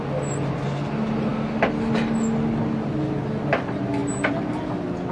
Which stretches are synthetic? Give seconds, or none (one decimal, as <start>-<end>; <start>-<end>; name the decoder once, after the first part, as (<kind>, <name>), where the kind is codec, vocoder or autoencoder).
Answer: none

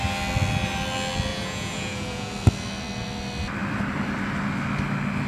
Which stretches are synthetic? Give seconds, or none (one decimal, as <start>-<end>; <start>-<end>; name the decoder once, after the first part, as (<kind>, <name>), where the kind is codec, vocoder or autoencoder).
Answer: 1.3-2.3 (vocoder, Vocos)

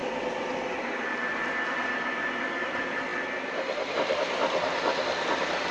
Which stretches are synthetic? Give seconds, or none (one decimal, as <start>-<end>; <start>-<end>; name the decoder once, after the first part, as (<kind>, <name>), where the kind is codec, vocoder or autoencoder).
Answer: none

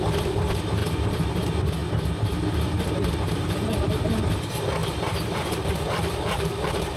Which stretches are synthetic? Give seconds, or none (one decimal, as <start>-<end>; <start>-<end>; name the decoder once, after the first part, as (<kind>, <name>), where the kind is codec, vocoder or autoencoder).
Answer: 0.8-1.3 (vocoder, BigVGAN v2); 1.8-4.1; 4.8-7.0

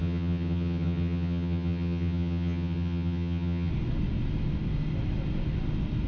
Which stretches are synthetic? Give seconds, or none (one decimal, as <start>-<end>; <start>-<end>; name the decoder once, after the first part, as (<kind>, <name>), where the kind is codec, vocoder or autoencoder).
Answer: 0.0-3.7 (vocoder, HiFi-GAN)

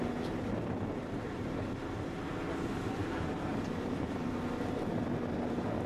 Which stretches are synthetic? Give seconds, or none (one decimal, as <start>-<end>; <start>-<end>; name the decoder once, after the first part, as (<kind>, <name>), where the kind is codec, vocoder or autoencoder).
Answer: 3.0-4.3 (vocoder, BigVGAN v2)

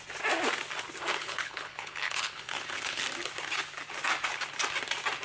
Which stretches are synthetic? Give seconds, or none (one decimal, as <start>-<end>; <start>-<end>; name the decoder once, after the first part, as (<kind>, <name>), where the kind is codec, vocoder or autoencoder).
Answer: 1.2-3.0 (codec, HILCodec)